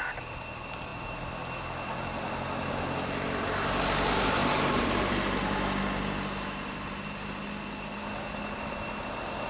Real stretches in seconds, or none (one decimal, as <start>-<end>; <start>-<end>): 0.0-4.4; 5.1-9.5

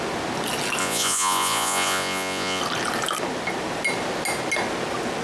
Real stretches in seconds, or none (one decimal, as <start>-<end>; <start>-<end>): 0.0-0.8; 2.6-5.2